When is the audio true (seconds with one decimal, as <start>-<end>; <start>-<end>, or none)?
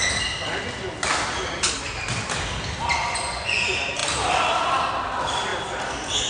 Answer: 0.0-3.0; 3.6-6.3